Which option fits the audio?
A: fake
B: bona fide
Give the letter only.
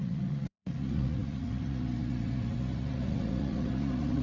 A